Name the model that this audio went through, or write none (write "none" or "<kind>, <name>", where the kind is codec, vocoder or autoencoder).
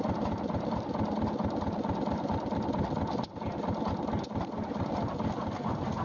none